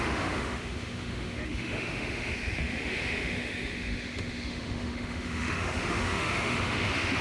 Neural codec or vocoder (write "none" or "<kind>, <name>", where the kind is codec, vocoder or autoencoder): autoencoder, DAC-VAE